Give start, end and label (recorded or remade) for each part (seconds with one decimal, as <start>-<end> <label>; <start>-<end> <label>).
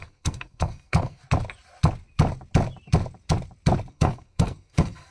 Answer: 0.0-1.2 remade; 1.2-3.9 recorded; 3.9-5.1 remade